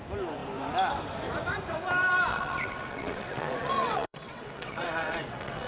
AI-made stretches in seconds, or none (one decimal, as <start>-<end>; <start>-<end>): 2.3-5.7